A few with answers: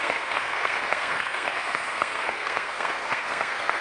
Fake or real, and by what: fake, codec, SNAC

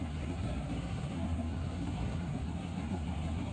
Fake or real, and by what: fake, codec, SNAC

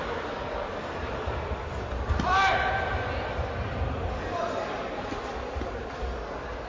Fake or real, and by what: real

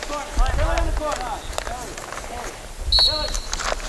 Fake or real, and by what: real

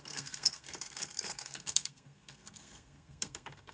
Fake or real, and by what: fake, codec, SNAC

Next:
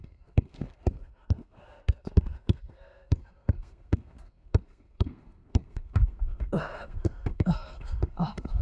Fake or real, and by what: fake, codec, SNAC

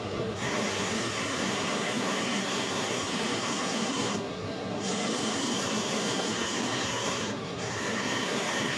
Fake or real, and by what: fake, codec, SNAC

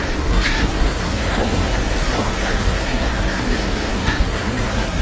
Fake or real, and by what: fake, codec, SNAC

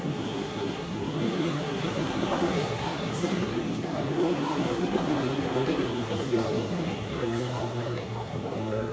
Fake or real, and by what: fake, codec, SNAC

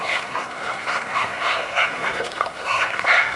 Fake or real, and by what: fake, codec, SNAC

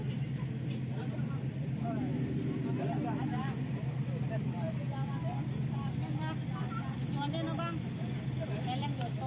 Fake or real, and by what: real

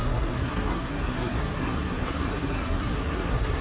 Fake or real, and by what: fake, codec, SNAC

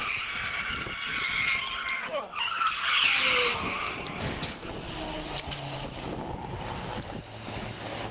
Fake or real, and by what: real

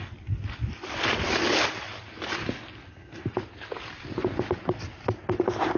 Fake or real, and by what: real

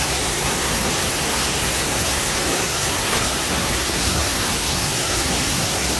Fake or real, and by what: fake, codec, SNAC